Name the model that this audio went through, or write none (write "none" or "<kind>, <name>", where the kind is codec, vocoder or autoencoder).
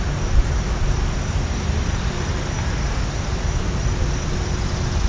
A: none